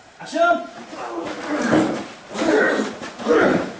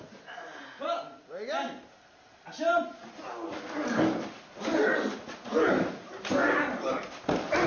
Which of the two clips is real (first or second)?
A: second